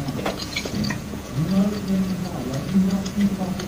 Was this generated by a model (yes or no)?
yes